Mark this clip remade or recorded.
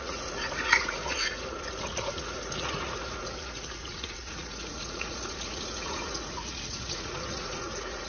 remade